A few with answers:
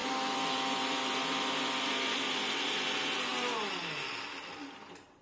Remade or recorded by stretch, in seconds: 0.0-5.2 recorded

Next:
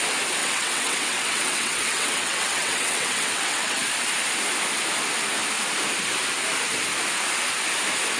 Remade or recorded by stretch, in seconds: 0.0-0.4 recorded; 0.4-3.8 remade; 3.8-8.2 recorded

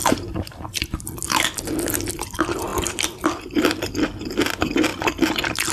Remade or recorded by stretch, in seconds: 0.0-1.6 remade; 1.6-2.7 recorded; 2.7-3.4 remade; 3.4-5.7 recorded